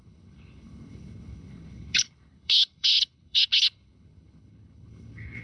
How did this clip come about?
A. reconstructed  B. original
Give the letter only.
A